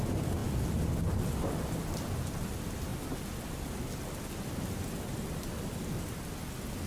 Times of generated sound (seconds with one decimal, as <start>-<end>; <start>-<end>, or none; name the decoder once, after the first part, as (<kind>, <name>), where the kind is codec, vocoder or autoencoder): none